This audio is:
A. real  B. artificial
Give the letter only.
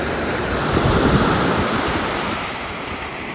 B